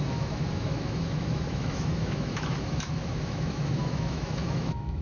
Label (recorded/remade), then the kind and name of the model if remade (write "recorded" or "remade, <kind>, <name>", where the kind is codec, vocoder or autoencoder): remade, autoencoder, DAC-VAE